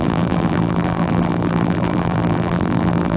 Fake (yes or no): yes